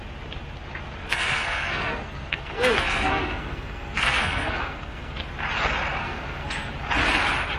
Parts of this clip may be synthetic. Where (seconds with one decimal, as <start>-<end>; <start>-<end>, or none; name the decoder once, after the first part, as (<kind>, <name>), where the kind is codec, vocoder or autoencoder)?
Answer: 1.0-5.2 (codec, SNAC); 6.0-6.7